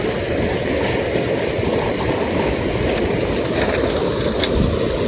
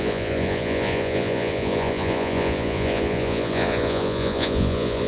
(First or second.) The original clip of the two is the first